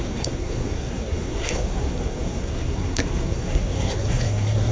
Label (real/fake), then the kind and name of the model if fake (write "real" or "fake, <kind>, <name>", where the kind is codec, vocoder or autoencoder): fake, codec, SNAC